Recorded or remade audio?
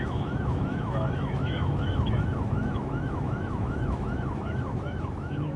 remade